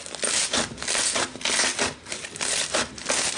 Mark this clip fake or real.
real